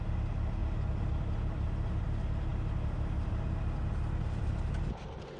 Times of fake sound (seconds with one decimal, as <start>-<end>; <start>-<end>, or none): none